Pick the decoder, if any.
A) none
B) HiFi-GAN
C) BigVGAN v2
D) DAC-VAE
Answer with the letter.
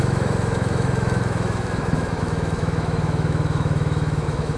D